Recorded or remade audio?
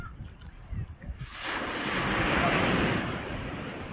remade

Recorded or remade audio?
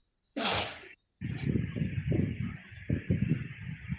remade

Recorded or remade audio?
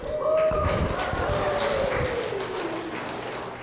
recorded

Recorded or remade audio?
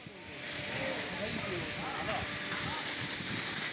recorded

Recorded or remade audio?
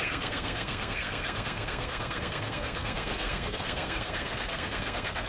remade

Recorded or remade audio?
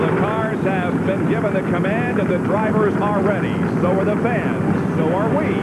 recorded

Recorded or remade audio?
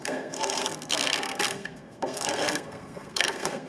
remade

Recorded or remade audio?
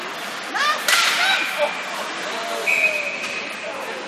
recorded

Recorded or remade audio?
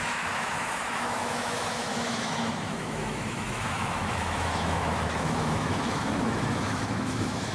remade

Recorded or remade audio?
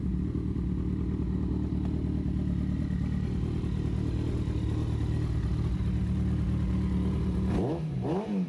recorded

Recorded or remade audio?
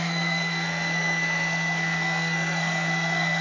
remade